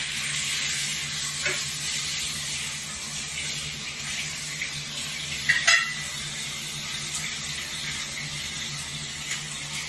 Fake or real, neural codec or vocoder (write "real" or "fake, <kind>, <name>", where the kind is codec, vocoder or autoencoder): real